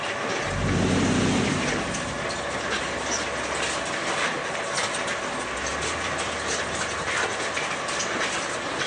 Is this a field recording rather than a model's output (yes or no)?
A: yes